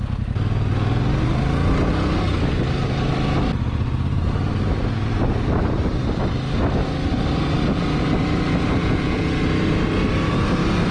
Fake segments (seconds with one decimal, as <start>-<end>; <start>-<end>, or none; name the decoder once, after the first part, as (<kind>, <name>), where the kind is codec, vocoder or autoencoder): 8.8-9.4 (vocoder, Vocos)